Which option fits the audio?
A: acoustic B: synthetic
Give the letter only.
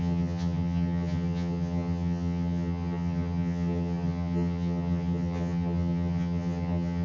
B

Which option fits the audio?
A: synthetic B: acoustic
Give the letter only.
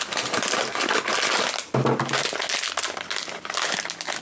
B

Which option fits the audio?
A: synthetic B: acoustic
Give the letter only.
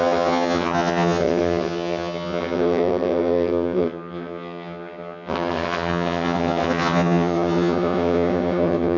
A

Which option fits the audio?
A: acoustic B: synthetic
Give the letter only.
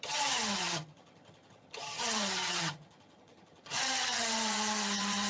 B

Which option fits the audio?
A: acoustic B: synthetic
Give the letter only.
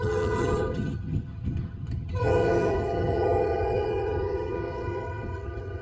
B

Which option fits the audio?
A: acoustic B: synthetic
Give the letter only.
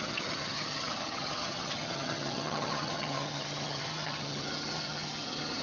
B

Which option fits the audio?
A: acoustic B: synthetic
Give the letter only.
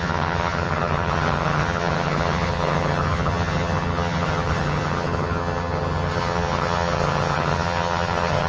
B